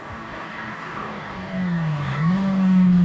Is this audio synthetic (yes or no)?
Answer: yes